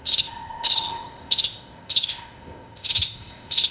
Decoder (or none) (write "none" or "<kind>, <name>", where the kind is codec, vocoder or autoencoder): codec, ZipCodec